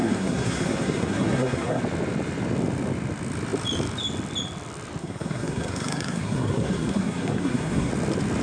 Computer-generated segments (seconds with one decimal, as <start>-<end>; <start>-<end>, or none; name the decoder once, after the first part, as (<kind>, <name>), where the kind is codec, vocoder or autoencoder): 0.0-1.8 (codec, SNAC); 5.0-7.9